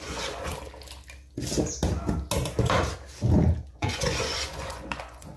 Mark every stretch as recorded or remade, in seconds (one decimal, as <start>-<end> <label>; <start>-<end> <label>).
0.0-0.5 remade; 0.5-3.7 recorded; 3.7-5.4 remade